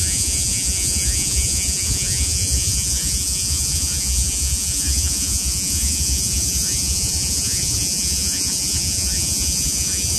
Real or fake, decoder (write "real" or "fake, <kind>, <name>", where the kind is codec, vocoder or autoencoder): fake, vocoder, Vocos